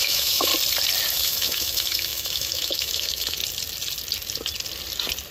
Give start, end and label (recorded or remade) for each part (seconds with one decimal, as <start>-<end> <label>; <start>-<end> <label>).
0.0-0.5 remade; 0.5-1.1 recorded; 1.1-3.4 remade; 3.4-5.3 recorded